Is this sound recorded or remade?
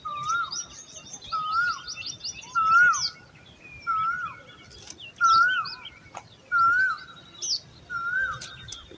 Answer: recorded